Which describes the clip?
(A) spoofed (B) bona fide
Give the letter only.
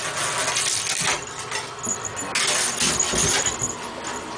B